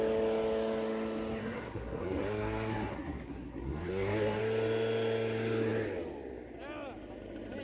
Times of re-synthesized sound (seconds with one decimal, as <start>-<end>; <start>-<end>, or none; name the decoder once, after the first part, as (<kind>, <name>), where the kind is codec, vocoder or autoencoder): 1.4-4.4 (codec, SNAC)